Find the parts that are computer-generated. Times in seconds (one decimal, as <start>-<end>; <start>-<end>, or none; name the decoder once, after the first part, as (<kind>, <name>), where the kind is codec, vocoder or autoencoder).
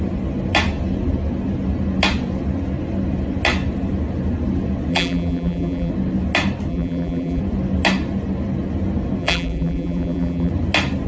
4.9-5.9 (vocoder, BigVGAN v2); 6.7-7.4; 9.2-10.5